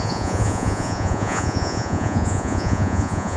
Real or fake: fake